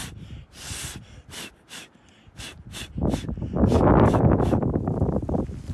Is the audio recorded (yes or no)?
yes